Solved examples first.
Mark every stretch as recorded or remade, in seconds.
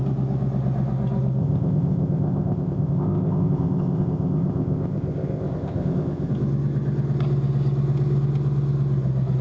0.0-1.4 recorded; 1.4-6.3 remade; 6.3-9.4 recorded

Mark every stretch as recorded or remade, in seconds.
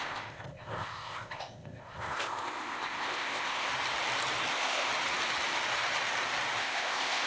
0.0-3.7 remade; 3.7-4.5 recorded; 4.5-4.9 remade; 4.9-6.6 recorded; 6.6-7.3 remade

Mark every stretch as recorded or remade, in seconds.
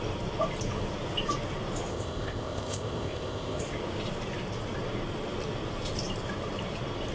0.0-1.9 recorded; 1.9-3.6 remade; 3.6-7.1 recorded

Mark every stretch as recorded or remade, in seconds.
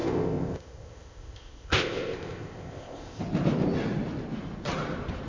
0.0-3.2 remade; 3.2-5.3 recorded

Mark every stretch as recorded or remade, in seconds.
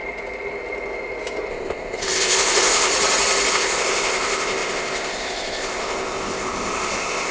0.0-1.5 recorded; 1.5-2.9 remade; 2.9-3.5 recorded; 3.5-7.3 remade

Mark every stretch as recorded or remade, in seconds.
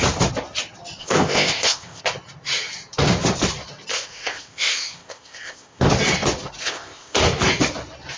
0.0-1.0 recorded; 1.0-2.0 remade; 2.0-3.9 recorded; 3.9-5.9 remade; 5.9-6.6 recorded; 6.6-7.2 remade; 7.2-8.2 recorded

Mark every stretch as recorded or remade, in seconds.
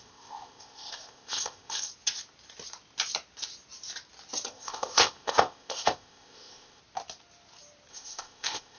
0.0-1.9 remade; 1.9-4.5 recorded; 4.5-6.8 remade; 6.8-7.9 recorded; 7.9-8.8 remade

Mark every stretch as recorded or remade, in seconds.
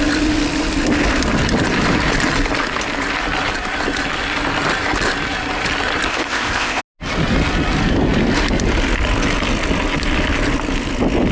0.0-6.1 recorded; 6.1-6.8 remade; 6.8-11.3 recorded